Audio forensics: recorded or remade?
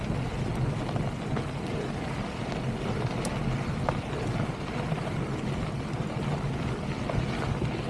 recorded